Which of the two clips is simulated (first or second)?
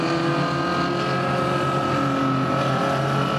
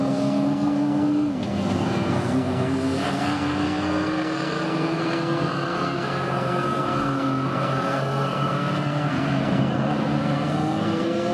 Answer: second